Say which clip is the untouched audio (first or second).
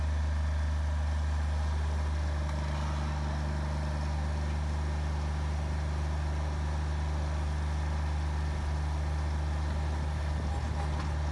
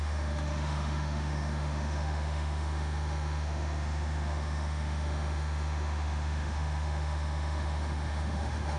first